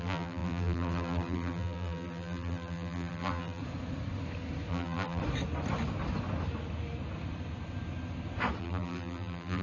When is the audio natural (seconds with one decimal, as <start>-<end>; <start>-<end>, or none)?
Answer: 3.6-4.7; 5.2-8.6